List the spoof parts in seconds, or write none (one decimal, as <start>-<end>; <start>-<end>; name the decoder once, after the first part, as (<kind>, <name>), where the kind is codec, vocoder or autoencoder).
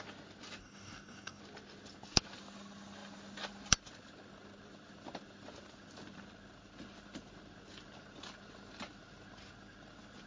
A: 0.6-1.4 (codec, DAC)